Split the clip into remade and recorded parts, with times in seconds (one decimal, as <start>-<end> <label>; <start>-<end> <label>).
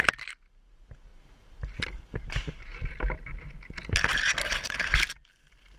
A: 0.0-1.1 recorded; 1.1-2.0 remade; 2.0-2.7 recorded; 2.7-4.9 remade; 4.9-5.8 recorded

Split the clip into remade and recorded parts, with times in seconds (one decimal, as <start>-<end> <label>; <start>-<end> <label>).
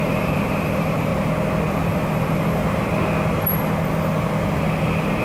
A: 0.0-1.1 remade; 1.1-1.7 recorded; 1.7-2.6 remade; 2.6-5.2 recorded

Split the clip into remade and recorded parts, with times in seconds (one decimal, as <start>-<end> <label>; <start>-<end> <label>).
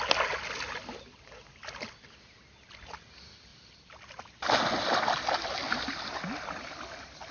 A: 0.0-5.6 recorded; 5.6-6.2 remade; 6.2-7.3 recorded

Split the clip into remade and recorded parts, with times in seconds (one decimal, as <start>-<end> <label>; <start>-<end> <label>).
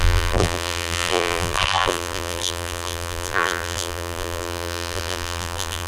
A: 0.0-5.9 remade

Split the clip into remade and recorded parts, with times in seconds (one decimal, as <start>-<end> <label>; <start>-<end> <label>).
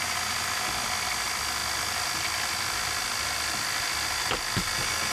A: 0.0-1.6 recorded; 1.6-2.7 remade; 2.7-5.1 recorded